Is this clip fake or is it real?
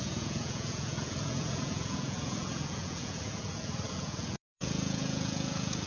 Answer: fake